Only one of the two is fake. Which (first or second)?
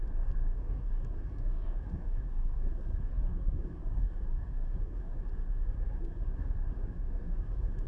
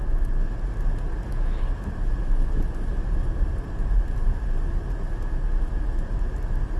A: first